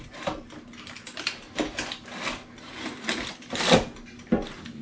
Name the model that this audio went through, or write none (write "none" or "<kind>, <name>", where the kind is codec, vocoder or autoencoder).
none